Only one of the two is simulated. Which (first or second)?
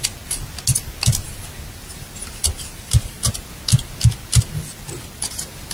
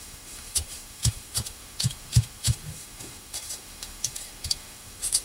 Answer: second